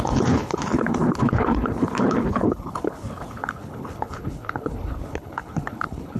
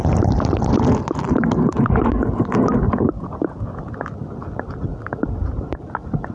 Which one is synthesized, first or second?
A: first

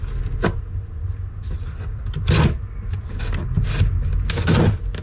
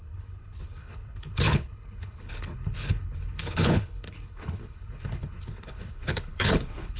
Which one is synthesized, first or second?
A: second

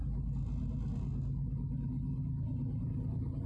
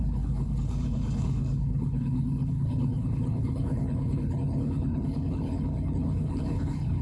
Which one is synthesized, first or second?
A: second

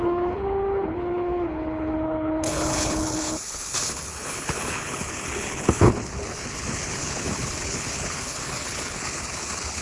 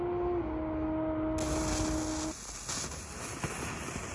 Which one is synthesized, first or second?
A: first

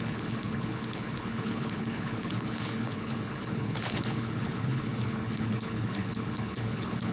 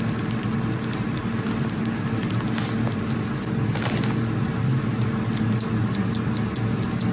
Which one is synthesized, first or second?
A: first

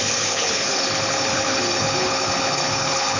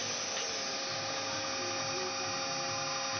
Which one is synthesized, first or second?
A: first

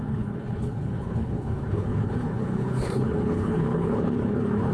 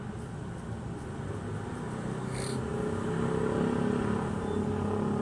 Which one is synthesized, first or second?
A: first